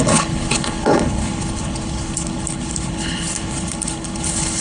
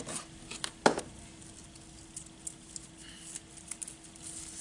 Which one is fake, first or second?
first